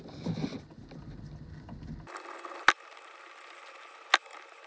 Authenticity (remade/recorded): recorded